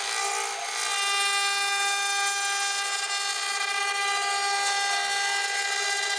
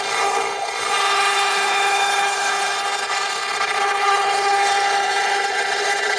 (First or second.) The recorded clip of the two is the first